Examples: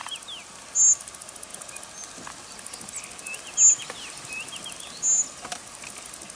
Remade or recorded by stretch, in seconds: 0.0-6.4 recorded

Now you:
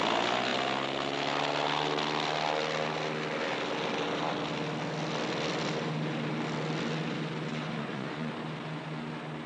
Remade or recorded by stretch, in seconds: 0.0-7.5 recorded; 7.5-8.3 remade; 8.3-9.5 recorded

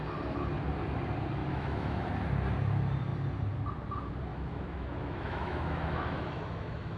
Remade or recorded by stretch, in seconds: 0.0-1.4 recorded; 1.4-2.1 remade; 2.1-4.3 recorded; 4.3-7.0 remade

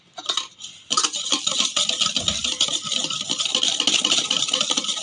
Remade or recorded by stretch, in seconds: 0.0-5.0 recorded

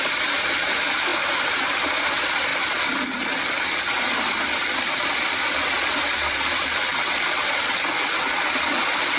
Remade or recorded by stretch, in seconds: 0.0-1.1 remade; 1.1-1.7 recorded; 1.7-2.5 remade; 2.5-3.8 recorded; 3.8-6.0 remade; 6.0-6.5 recorded; 6.5-6.9 remade; 6.9-9.2 recorded

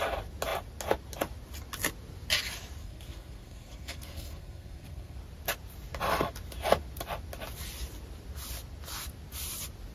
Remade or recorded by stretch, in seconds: 0.0-2.8 recorded; 2.8-5.2 remade; 5.2-9.9 recorded